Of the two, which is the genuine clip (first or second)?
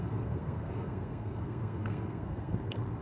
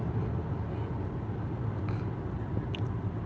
second